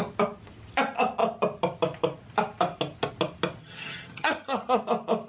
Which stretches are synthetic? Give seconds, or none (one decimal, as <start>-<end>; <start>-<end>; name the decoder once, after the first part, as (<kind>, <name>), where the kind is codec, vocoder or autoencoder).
3.6-4.8 (vocoder, HiFi-GAN)